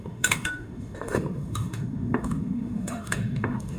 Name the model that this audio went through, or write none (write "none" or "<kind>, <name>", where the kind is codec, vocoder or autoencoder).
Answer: autoencoder, DAC-VAE